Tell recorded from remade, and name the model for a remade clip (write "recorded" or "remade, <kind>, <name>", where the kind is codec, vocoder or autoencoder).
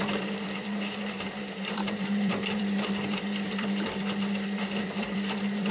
remade, vocoder, BigVGAN v2